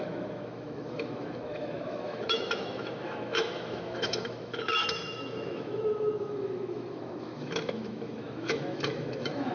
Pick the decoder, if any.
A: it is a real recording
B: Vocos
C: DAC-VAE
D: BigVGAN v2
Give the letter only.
C